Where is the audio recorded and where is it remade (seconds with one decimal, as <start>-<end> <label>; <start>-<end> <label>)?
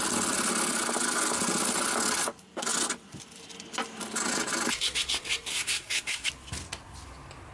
0.0-5.5 recorded; 5.5-6.3 remade; 6.3-7.5 recorded